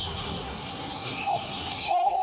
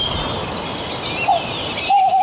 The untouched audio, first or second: second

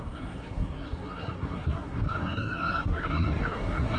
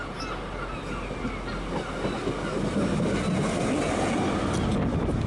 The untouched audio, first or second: second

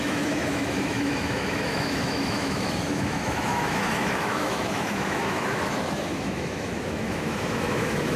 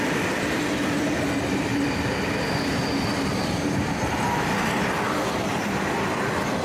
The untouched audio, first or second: second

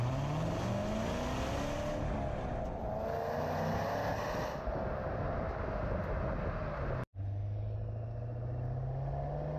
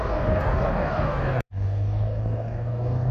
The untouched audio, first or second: first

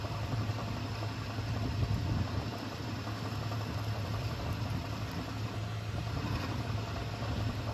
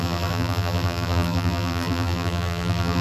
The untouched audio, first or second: first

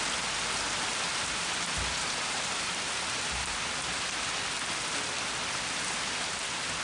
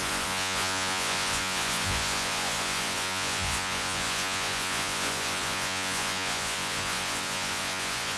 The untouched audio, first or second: first